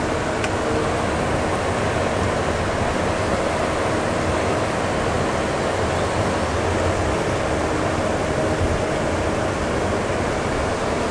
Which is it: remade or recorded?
recorded